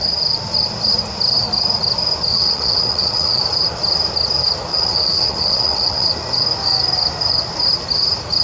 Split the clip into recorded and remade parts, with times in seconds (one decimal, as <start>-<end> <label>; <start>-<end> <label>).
0.0-2.3 recorded; 2.3-3.4 remade; 3.4-4.7 recorded; 4.7-6.1 remade; 6.1-8.4 recorded